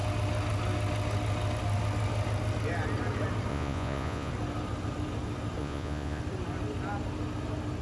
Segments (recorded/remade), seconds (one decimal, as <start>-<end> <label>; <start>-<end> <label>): 0.0-3.5 recorded; 3.5-4.3 remade; 4.3-5.6 recorded; 5.6-6.2 remade; 6.2-7.8 recorded